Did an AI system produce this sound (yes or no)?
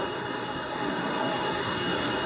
yes